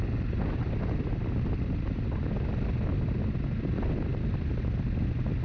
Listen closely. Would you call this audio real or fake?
real